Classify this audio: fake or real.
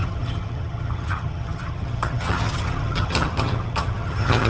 fake